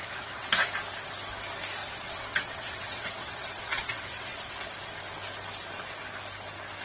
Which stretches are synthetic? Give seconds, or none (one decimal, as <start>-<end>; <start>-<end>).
0.0-0.7; 1.8-4.5